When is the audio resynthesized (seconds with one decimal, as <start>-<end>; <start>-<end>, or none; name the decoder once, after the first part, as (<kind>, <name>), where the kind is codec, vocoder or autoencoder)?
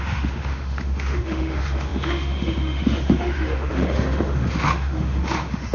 0.0-5.7 (autoencoder, DAC-VAE)